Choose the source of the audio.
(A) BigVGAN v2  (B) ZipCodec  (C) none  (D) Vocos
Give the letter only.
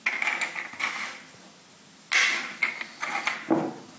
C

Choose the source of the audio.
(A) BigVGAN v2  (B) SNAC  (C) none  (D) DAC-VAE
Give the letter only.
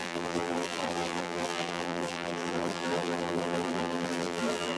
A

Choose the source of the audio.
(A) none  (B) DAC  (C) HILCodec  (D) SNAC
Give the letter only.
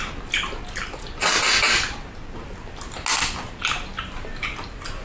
A